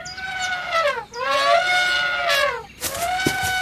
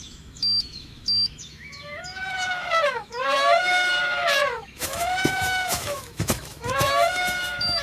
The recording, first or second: first